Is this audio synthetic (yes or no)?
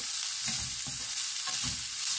no